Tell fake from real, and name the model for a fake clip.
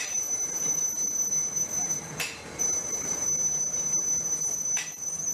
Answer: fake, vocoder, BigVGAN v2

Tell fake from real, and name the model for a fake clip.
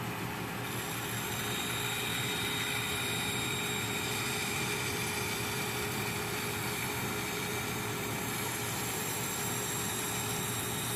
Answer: fake, vocoder, BigVGAN v2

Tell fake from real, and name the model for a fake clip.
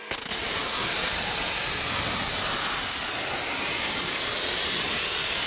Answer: real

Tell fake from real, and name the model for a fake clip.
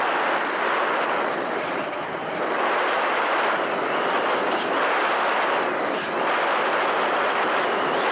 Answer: real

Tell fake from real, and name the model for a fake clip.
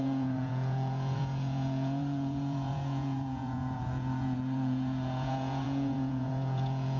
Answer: fake, vocoder, Vocos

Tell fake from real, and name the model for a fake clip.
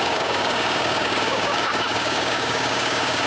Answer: fake, codec, DAC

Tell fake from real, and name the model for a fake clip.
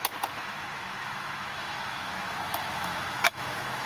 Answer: fake, autoencoder, DAC-VAE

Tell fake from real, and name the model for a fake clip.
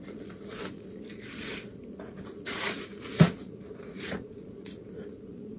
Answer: fake, vocoder, Vocos